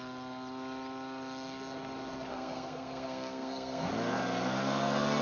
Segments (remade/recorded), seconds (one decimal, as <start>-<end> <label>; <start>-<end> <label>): 0.0-2.3 recorded; 2.3-3.9 remade; 3.9-5.2 recorded